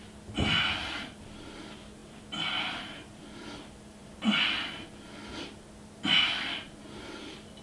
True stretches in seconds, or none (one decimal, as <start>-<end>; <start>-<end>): 0.0-2.0; 3.2-4.0; 4.5-7.6